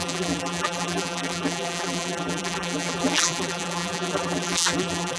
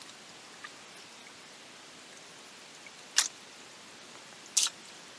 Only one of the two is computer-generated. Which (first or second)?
first